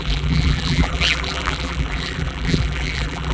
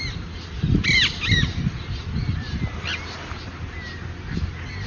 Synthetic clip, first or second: first